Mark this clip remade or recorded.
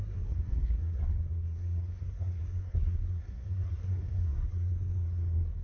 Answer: remade